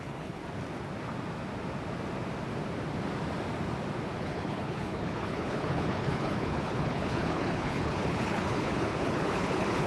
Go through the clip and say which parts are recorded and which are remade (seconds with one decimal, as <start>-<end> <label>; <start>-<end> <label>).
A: 0.0-0.4 remade; 0.4-4.2 recorded; 4.2-9.9 remade

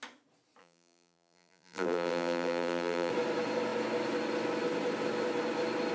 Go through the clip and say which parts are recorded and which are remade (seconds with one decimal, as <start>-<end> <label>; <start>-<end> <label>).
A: 0.0-0.6 recorded; 0.6-3.1 remade; 3.1-5.9 recorded

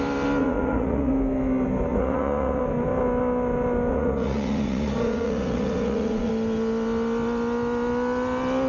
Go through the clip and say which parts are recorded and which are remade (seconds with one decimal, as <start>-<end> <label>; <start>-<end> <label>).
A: 0.0-0.4 recorded; 0.4-1.1 remade; 1.1-1.9 recorded; 1.9-2.6 remade; 2.6-3.9 recorded; 3.9-6.3 remade; 6.3-8.7 recorded

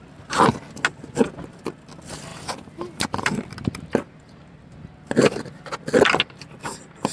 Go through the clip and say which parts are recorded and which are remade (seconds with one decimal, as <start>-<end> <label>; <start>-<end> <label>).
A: 0.0-7.1 recorded

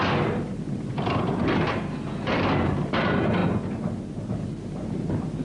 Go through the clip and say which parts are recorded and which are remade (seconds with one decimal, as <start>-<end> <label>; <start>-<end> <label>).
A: 0.0-3.4 remade; 3.4-4.3 recorded; 4.3-5.4 remade

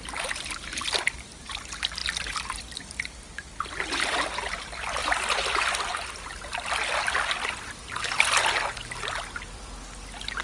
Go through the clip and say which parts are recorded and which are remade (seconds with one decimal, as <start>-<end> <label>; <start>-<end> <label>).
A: 0.0-10.4 recorded